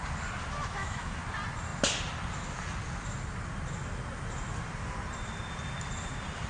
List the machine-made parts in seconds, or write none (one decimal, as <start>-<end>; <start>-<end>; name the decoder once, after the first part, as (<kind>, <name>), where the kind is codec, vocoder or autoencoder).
0.6-1.2 (autoencoder, DAC-VAE)